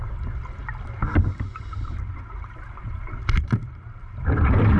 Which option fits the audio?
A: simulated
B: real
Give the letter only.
B